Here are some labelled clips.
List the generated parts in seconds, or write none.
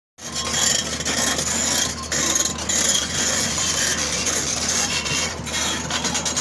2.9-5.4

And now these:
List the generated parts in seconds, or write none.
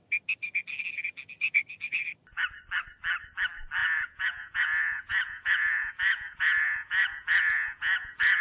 3.8-8.4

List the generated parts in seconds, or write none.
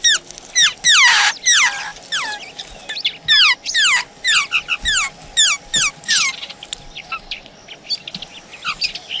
none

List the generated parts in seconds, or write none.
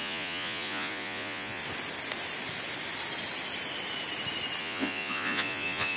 0.0-1.6; 4.6-6.0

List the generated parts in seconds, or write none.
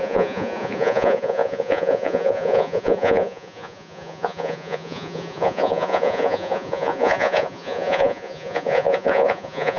0.0-9.8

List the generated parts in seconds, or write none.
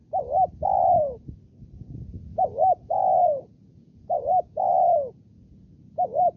1.7-6.4